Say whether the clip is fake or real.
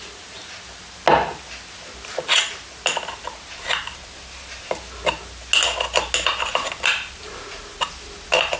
real